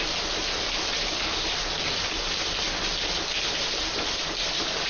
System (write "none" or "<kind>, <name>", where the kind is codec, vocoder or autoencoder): none